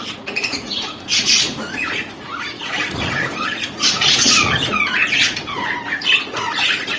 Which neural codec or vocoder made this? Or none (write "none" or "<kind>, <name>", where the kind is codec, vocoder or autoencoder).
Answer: vocoder, Vocos